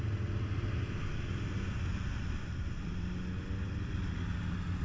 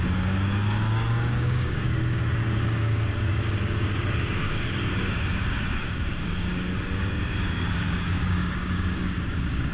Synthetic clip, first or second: second